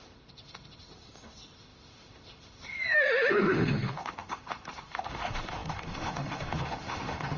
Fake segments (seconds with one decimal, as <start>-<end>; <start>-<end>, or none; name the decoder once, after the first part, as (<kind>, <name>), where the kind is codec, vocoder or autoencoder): 0.0-7.4 (autoencoder, DAC-VAE)